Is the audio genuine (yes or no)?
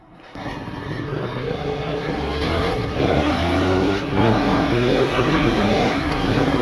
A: no